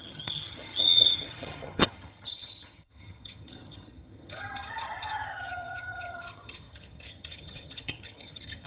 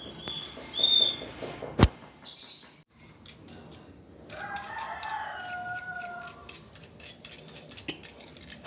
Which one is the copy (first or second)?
first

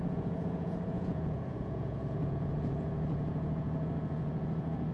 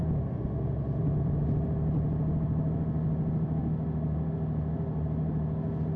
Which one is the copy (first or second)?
first